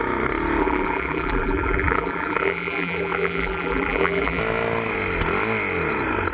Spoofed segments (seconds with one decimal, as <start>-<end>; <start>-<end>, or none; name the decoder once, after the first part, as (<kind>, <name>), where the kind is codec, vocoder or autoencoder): 0.6-4.4 (vocoder, BigVGAN v2)